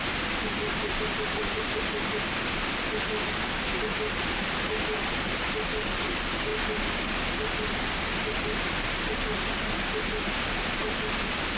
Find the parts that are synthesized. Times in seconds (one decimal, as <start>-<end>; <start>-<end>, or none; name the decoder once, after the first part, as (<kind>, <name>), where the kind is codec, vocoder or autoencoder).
0.6-1.8 (vocoder, BigVGAN v2)